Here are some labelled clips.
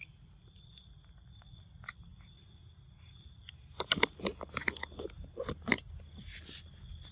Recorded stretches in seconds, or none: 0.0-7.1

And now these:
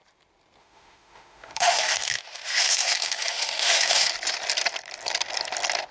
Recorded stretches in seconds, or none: 0.0-0.6; 4.1-5.9

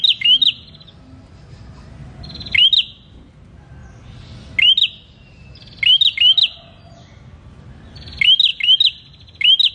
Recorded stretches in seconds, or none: 0.0-9.7